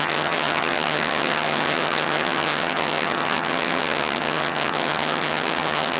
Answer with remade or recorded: remade